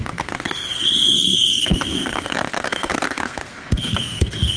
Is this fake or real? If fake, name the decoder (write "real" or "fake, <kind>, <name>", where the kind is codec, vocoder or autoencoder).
fake, codec, SNAC